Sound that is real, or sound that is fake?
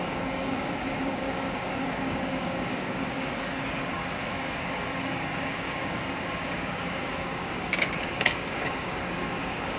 fake